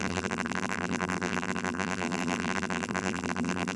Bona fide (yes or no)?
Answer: no